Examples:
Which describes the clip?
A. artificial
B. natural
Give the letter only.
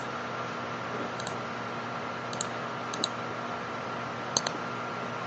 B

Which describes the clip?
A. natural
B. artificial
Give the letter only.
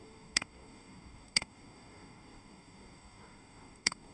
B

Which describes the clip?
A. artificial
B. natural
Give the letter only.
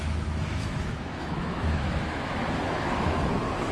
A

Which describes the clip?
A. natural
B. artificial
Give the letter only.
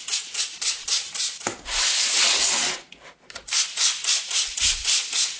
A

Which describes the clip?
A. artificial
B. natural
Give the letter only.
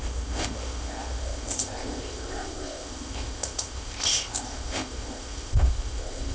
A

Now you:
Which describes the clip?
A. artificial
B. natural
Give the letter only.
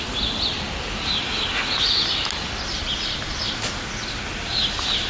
B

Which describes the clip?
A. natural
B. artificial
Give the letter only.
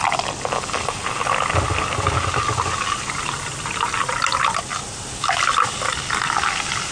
A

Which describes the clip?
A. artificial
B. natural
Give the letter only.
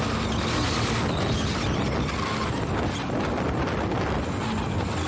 B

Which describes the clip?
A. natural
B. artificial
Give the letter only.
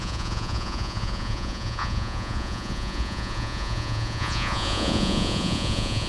B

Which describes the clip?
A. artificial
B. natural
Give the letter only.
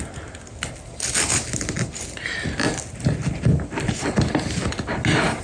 B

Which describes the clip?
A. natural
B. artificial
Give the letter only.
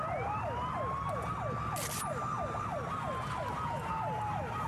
A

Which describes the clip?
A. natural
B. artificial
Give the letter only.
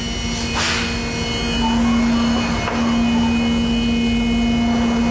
A